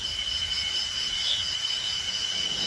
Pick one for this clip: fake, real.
fake